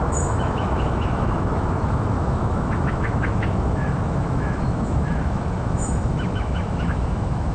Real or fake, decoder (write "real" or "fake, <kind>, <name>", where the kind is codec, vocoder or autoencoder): fake, autoencoder, DAC-VAE